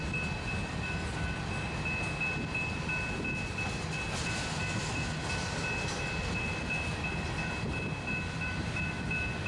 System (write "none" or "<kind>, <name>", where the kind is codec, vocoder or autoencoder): none